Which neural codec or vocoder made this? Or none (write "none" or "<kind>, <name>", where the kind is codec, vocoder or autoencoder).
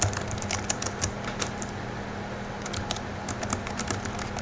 none